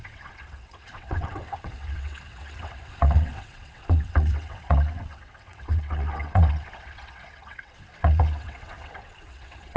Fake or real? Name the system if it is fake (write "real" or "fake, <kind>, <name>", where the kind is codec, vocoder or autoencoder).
fake, vocoder, WaveNeXt